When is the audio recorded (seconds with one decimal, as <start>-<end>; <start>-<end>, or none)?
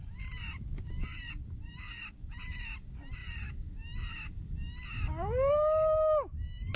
0.0-6.8